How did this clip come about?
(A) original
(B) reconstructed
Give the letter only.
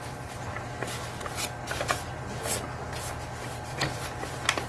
A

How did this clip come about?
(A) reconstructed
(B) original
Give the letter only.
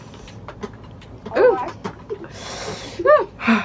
B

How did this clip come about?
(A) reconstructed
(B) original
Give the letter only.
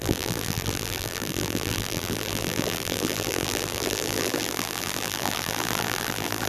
A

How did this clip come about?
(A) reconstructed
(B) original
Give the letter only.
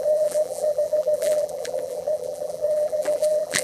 A